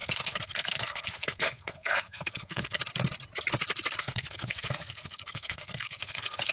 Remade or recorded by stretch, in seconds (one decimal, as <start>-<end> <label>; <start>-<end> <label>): 0.0-2.8 remade; 2.8-4.0 recorded; 4.0-6.5 remade